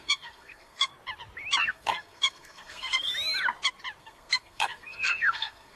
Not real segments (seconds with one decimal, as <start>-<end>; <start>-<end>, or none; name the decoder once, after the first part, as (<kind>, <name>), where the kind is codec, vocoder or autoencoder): 0.0-0.9 (codec, SNAC); 1.6-3.1; 4.0-5.8